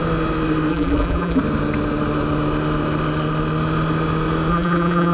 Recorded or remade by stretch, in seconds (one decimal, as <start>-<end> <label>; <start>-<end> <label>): 0.0-0.7 recorded; 0.7-1.4 remade; 1.4-4.5 recorded; 4.5-5.1 remade